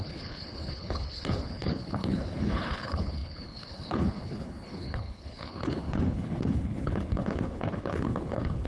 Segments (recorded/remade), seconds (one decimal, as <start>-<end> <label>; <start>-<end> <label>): 0.0-8.7 remade